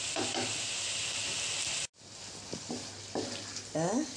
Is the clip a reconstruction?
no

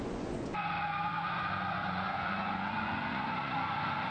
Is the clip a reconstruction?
yes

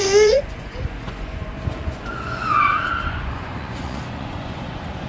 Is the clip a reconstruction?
yes